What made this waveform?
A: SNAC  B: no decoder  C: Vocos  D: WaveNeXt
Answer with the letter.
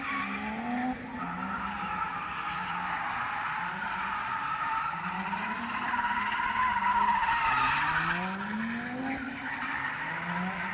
B